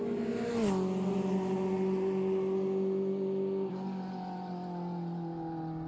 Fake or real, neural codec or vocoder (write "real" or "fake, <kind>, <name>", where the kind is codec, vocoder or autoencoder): real